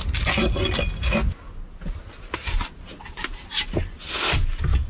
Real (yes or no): yes